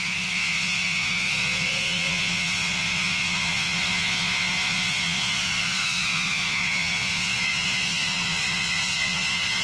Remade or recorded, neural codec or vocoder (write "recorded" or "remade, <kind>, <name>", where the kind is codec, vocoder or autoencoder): remade, vocoder, Vocos